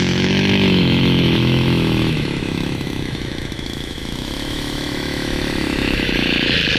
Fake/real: fake